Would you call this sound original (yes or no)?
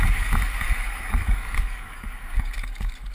no